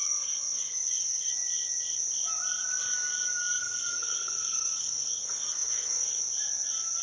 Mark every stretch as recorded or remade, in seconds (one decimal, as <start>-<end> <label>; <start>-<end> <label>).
0.0-1.3 remade; 1.3-3.5 recorded; 3.5-6.2 remade; 6.2-7.0 recorded